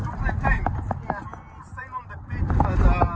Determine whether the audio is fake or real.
real